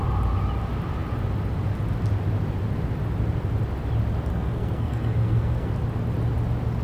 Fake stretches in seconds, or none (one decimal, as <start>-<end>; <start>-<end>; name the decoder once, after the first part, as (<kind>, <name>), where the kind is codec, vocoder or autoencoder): 4.3-5.7 (codec, SNAC)